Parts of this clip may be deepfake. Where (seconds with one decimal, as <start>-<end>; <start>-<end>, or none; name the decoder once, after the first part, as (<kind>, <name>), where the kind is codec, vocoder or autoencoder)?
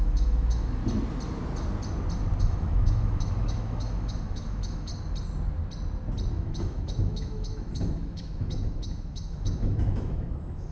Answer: 0.0-0.8 (autoencoder, DAC-VAE); 2.4-4.9; 6.3-10.7